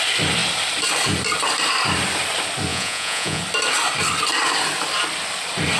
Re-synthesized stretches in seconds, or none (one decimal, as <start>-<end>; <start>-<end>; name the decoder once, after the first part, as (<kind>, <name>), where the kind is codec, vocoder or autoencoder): 2.7-3.4 (vocoder, Vocos)